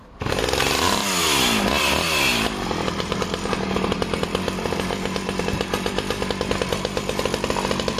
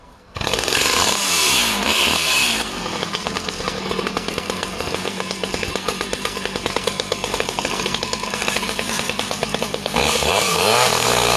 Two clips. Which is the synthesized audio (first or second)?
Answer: second